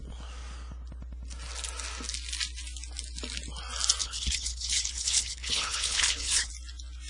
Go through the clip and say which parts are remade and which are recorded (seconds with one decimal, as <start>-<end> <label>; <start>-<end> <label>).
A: 0.0-4.0 recorded; 4.0-6.5 remade; 6.5-7.1 recorded